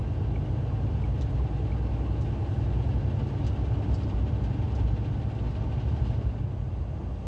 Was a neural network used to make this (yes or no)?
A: no